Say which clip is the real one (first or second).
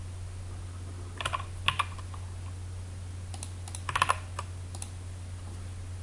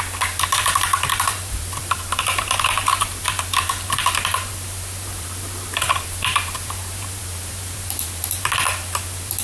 first